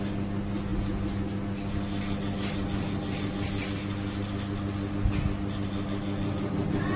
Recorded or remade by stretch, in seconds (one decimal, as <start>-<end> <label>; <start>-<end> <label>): 0.0-7.0 recorded